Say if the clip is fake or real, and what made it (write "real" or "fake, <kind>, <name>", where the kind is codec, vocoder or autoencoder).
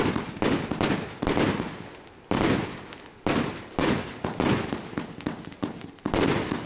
real